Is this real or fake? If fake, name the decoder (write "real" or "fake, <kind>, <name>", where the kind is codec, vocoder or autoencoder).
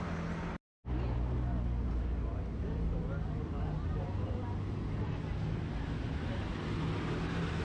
real